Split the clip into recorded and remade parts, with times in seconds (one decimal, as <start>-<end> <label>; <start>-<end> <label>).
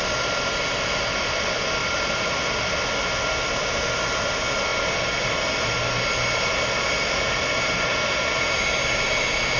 0.0-1.8 recorded; 1.8-2.6 remade; 2.6-9.6 recorded